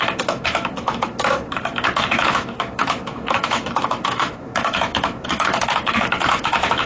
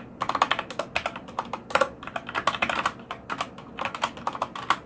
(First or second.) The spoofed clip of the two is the first